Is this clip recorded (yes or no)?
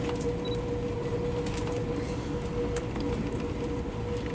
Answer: yes